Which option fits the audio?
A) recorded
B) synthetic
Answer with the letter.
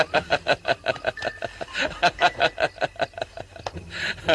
A